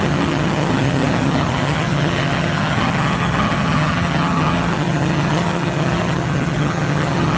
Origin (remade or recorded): remade